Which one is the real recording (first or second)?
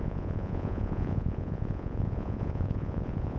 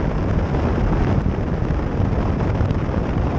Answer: second